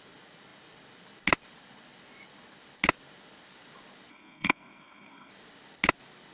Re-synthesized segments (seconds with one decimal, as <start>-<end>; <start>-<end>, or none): 4.1-5.3